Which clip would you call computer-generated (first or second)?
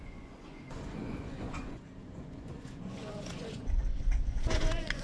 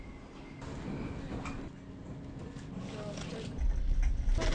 first